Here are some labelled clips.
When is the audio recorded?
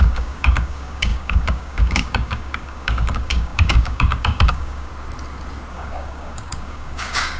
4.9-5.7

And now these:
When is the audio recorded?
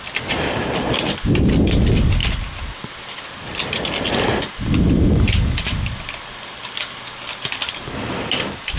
0.0-8.8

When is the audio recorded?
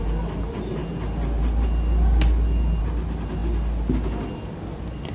0.0-5.1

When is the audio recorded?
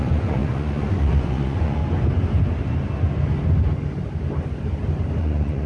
1.8-5.2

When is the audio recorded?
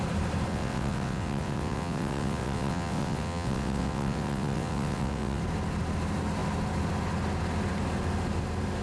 0.0-0.5; 5.4-8.8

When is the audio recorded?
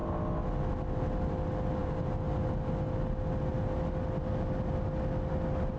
0.0-5.8